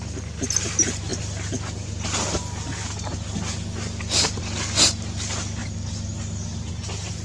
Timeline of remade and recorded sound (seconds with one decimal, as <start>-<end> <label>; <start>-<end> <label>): 0.0-7.2 recorded